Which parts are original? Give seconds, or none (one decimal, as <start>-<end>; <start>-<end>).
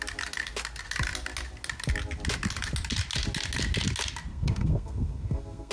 0.0-4.3